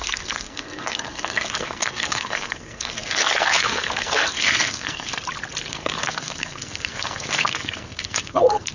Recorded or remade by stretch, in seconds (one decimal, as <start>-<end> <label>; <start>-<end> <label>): 0.0-5.1 remade; 5.1-5.7 recorded; 5.7-8.7 remade